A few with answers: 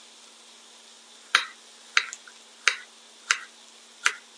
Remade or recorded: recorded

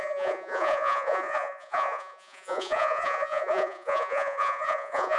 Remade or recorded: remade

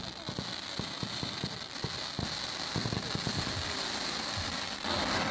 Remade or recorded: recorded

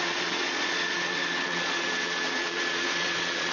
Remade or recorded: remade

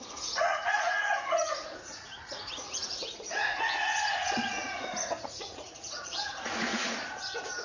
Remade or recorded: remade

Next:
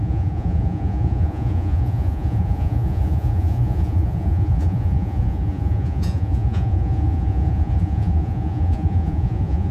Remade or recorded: remade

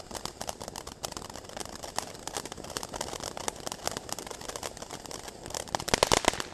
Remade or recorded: recorded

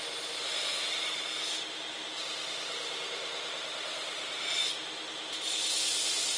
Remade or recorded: recorded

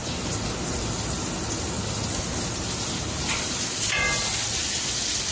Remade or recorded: recorded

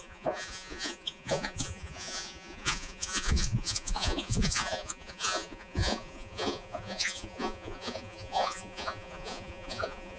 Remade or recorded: remade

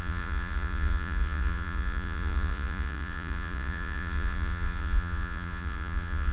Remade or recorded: remade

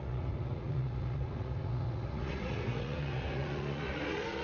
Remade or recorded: remade